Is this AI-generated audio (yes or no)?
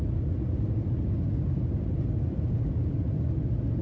no